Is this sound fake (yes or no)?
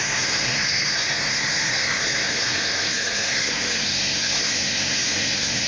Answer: yes